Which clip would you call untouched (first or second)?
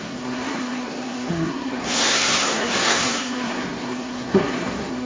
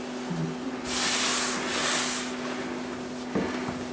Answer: second